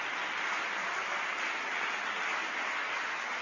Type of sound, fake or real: real